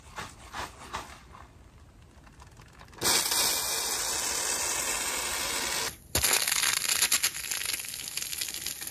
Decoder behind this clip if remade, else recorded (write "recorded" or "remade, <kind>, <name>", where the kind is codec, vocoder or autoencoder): recorded